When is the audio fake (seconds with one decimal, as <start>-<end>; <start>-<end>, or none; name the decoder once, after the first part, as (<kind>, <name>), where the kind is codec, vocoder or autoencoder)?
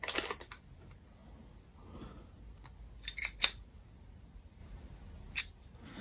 none